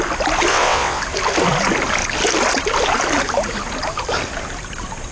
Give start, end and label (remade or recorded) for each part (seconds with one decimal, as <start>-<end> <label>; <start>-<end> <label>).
0.0-0.5 recorded; 0.5-1.0 remade; 1.0-5.1 recorded